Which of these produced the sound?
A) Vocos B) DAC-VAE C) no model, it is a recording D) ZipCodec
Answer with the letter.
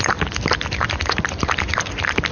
C